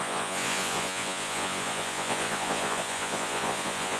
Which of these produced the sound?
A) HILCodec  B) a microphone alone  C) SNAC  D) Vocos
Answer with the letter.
D